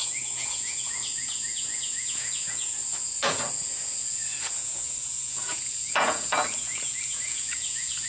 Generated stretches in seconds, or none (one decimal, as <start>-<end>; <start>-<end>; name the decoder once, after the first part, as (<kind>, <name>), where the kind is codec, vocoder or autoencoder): 0.0-8.1 (vocoder, Vocos)

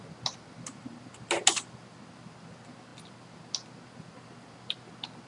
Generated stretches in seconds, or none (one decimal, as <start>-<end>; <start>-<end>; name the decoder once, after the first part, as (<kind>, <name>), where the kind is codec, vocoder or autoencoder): none

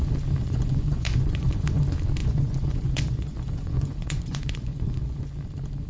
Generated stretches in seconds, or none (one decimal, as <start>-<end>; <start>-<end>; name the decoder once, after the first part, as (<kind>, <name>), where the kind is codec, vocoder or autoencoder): 0.4-1.8 (vocoder, Vocos); 2.2-5.4

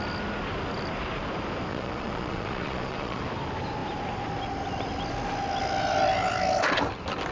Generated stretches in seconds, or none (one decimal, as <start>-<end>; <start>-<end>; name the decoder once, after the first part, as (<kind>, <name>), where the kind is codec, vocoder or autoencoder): 1.7-3.2 (vocoder, Vocos)

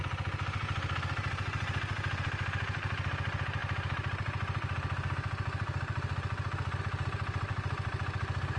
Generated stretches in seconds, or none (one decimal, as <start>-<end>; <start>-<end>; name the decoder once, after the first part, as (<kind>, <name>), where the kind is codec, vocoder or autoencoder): none

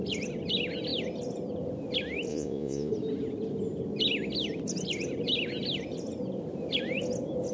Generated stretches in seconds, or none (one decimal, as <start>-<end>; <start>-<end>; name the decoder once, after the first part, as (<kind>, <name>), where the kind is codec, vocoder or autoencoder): 2.3-2.9 (vocoder, Vocos)

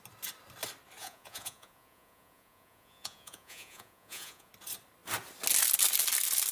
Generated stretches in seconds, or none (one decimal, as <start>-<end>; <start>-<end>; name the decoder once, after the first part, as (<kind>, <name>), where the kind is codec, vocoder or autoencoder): 1.0-4.5 (vocoder, Vocos)